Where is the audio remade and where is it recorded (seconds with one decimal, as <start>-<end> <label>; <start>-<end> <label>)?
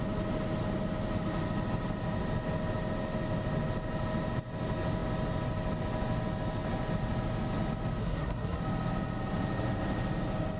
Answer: 0.0-8.0 recorded; 8.0-8.6 remade; 8.6-10.6 recorded